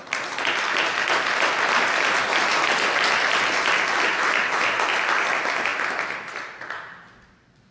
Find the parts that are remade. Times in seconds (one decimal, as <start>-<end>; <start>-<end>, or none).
none